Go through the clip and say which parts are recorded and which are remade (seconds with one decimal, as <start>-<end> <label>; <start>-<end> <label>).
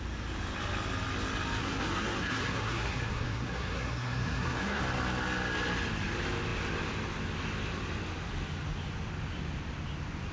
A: 0.0-1.6 recorded; 1.6-4.8 remade; 4.8-10.3 recorded